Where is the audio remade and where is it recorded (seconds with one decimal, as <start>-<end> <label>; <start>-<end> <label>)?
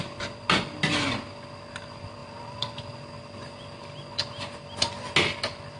0.0-5.8 recorded